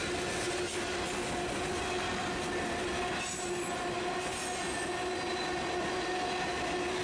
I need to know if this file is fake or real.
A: real